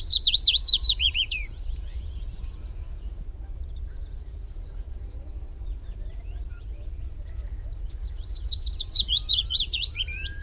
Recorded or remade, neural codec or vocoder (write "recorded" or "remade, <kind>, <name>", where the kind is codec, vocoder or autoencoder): remade, vocoder, Vocos